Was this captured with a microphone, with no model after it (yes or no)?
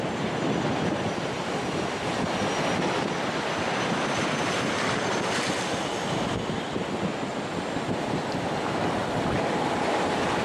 yes